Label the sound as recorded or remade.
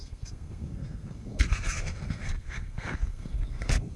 remade